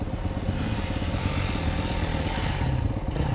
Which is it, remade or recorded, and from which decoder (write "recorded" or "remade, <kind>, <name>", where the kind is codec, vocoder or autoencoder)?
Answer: recorded